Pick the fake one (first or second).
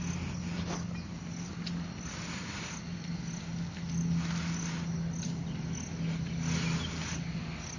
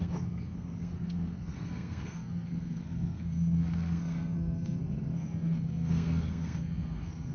second